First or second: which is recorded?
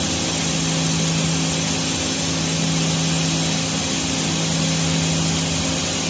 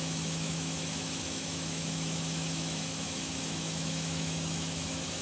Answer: first